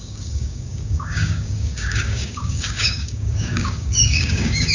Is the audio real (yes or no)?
no